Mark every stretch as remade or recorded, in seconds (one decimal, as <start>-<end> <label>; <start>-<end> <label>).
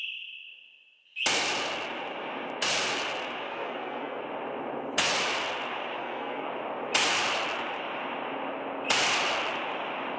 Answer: 0.0-3.5 recorded; 3.5-4.2 remade; 4.2-6.0 recorded; 6.0-6.5 remade; 6.5-10.2 recorded